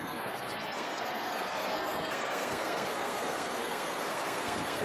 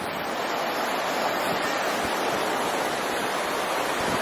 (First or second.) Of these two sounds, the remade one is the first